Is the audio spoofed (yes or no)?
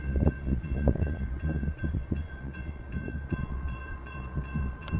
yes